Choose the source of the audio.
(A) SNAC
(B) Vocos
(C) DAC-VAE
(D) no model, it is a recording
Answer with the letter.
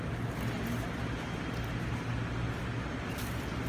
D